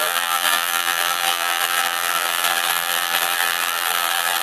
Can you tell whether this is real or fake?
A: fake